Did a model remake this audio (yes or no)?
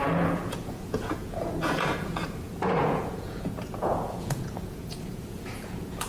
yes